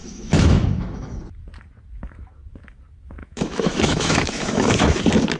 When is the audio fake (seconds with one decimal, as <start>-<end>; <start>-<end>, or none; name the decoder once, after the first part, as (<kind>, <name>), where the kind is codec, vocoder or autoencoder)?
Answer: 0.0-1.2 (autoencoder, DAC-VAE); 3.2-5.0